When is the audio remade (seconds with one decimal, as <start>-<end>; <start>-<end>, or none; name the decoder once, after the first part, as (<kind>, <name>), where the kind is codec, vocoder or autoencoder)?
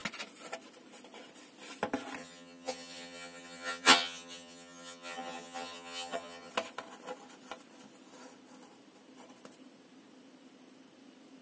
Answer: 2.2-6.5 (vocoder, HiFi-GAN)